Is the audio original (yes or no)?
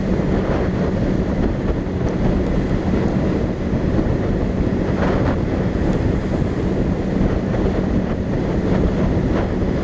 yes